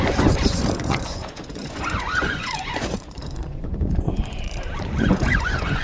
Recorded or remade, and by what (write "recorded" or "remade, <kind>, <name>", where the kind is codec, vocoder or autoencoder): remade, vocoder, Vocos